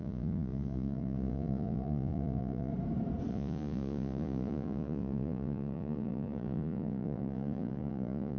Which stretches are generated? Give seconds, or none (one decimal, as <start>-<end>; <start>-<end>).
0.0-2.7; 3.3-8.4